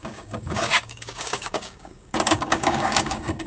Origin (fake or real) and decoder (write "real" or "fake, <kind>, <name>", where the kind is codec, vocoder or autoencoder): fake, codec, DAC